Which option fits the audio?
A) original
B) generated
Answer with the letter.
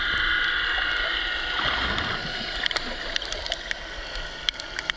A